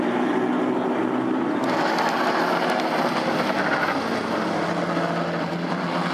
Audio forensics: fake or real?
real